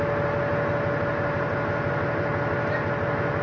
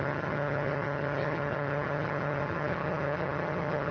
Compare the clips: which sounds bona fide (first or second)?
first